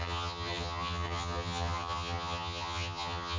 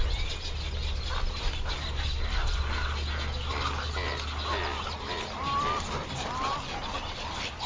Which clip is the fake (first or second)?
first